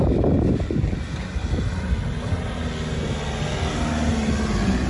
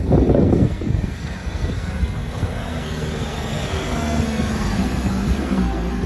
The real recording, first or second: first